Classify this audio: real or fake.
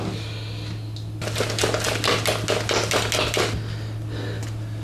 real